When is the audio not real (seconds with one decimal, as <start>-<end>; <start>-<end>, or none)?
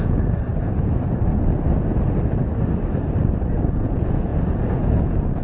0.0-0.5; 3.7-5.4